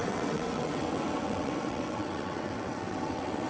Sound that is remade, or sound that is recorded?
remade